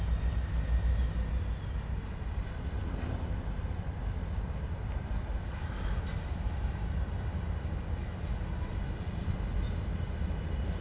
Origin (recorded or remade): recorded